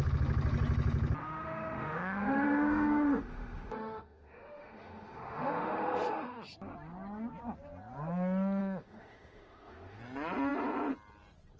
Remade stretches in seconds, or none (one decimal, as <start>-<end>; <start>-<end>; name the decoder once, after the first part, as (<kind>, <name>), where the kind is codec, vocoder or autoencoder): 1.2-6.3 (autoencoder, DAC-VAE); 8.6-10.0